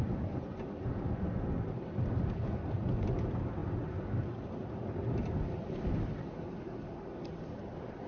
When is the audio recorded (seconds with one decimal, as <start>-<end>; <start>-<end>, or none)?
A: 0.0-8.1